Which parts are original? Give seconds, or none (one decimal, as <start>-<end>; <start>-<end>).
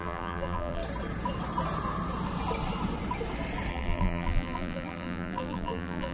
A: 0.8-3.7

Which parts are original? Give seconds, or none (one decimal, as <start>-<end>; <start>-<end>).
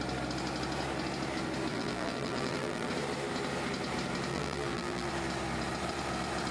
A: 0.0-1.7; 2.9-4.3; 5.1-6.5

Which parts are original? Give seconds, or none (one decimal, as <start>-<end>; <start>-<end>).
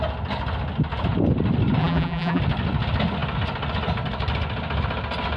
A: 0.0-1.8; 2.4-5.4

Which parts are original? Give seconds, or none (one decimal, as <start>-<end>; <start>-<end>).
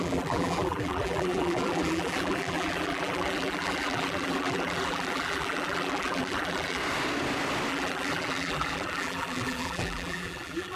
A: 6.8-7.7